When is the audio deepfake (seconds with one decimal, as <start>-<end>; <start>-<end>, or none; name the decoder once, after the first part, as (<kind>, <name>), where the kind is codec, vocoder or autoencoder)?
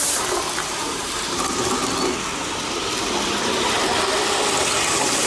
0.0-1.8 (vocoder, BigVGAN v2)